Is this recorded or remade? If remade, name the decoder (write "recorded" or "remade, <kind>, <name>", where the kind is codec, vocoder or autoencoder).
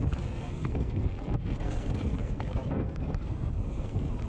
remade, codec, SNAC